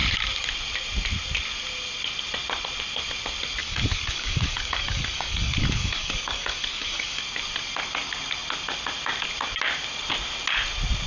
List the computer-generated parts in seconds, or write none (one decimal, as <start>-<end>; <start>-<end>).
3.6-7.2